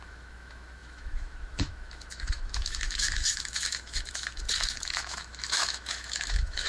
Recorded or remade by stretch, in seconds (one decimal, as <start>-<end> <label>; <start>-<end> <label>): 0.0-6.7 remade